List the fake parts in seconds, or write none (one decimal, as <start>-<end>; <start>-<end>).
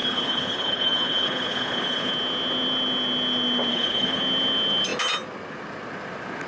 0.0-2.1; 3.7-4.2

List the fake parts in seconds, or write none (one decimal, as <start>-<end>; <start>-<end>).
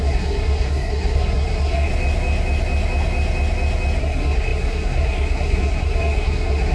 0.0-1.9; 4.0-6.7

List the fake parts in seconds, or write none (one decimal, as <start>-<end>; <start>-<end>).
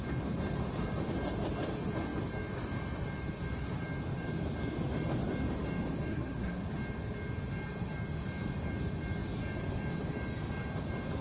6.1-6.7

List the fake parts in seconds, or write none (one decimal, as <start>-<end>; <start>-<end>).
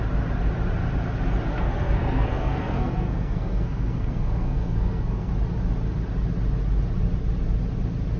1.5-5.3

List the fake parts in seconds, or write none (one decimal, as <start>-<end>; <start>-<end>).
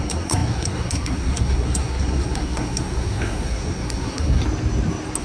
0.0-4.4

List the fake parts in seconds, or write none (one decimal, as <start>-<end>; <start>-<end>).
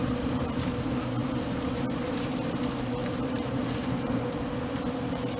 1.2-2.5; 3.0-4.1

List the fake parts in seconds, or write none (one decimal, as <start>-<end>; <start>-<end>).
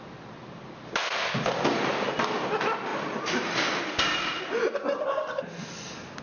0.0-2.9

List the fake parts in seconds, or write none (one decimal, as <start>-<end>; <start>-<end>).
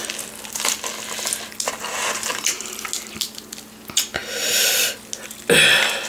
4.2-4.9